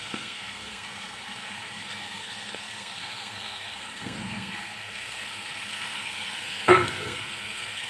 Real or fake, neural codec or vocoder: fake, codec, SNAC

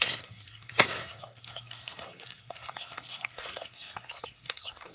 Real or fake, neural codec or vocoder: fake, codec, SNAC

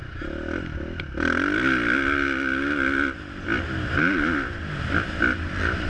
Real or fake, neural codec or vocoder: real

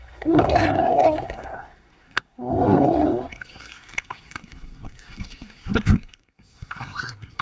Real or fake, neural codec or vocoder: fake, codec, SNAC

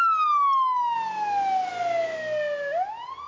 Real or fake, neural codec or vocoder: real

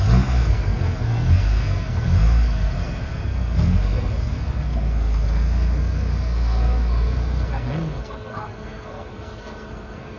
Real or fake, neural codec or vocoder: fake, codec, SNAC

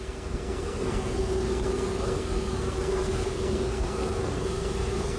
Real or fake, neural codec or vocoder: fake, codec, SNAC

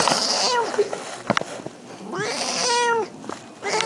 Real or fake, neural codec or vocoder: real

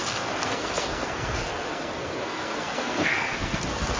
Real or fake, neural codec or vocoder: fake, codec, SNAC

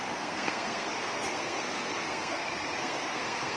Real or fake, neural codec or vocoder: fake, codec, SNAC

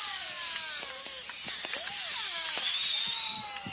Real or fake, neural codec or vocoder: real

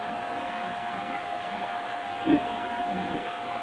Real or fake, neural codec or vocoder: fake, codec, SNAC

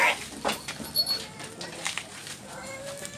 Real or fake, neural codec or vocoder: real